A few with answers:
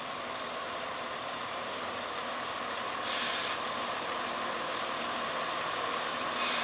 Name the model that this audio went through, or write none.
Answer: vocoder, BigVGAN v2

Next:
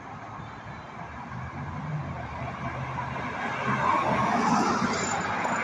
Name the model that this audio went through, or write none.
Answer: none